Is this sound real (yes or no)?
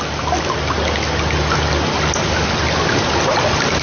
yes